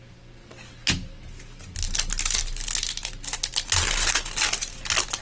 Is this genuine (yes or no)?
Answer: yes